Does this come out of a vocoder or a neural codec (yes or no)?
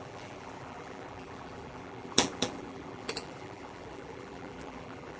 yes